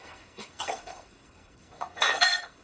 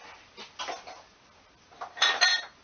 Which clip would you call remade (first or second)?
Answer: first